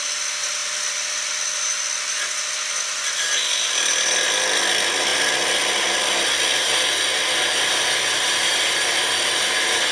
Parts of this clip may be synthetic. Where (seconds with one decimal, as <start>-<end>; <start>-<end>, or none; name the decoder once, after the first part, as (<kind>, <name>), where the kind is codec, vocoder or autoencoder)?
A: none